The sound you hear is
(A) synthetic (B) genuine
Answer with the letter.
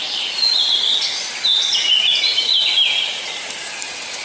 B